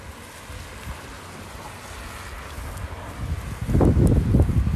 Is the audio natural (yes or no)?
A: yes